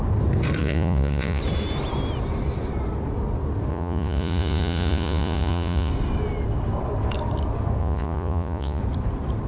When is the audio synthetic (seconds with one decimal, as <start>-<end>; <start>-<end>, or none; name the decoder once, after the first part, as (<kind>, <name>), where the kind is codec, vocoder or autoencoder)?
0.6-1.4 (vocoder, Vocos); 3.7-5.9; 7.8-8.8